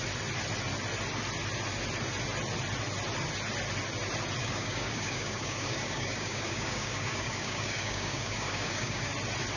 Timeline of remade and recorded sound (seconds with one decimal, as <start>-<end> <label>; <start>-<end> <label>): 0.0-4.4 recorded; 4.4-9.1 remade; 9.1-9.6 recorded